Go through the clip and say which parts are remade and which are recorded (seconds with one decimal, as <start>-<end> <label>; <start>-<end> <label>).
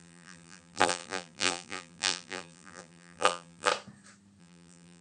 0.0-3.7 remade; 3.7-4.4 recorded; 4.4-5.0 remade